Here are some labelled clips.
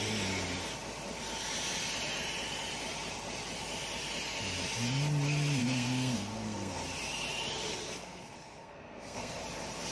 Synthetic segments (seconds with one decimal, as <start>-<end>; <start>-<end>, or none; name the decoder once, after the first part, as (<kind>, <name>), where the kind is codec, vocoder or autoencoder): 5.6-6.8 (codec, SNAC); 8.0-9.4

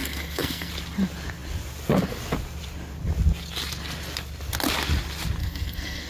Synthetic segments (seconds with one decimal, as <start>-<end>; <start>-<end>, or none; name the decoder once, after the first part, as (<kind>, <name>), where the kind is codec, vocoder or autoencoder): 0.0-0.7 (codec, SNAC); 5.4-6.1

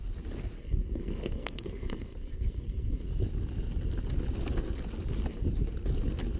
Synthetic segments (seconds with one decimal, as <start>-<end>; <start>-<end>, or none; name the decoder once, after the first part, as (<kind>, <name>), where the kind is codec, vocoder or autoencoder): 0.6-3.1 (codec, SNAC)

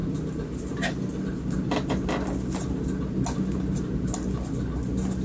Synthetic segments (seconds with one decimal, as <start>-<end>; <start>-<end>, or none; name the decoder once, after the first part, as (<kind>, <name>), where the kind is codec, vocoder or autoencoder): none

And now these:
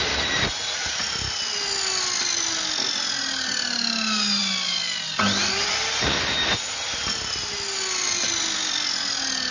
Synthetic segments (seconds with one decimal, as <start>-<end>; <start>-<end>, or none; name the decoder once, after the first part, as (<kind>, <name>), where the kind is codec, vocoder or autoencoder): none